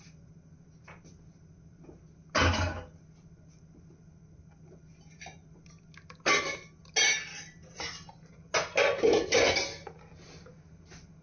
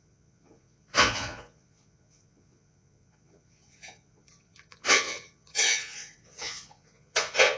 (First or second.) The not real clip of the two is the second